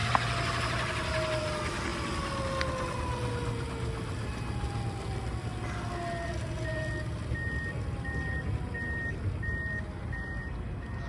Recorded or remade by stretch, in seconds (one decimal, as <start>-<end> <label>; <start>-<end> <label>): 0.0-11.1 recorded